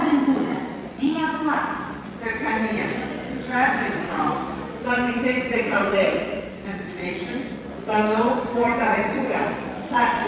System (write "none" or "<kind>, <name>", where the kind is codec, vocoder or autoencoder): vocoder, Vocos